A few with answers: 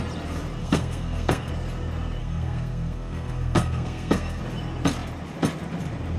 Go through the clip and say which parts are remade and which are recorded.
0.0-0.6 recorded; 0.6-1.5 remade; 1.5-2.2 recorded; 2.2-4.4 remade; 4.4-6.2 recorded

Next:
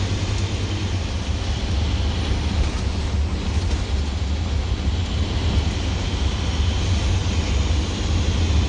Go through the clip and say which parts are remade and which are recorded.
0.0-8.7 recorded

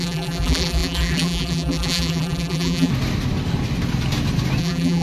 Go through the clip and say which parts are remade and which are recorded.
0.0-2.9 remade; 2.9-4.6 recorded; 4.6-5.0 remade

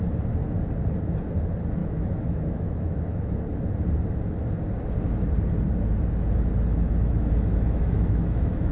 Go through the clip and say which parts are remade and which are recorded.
0.0-1.8 recorded; 1.8-3.4 remade; 3.4-6.7 recorded; 6.7-8.7 remade